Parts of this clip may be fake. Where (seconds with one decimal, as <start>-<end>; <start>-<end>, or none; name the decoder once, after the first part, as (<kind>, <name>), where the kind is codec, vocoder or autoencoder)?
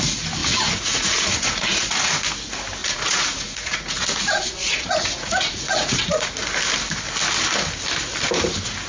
0.4-2.1 (vocoder, Vocos); 2.8-6.4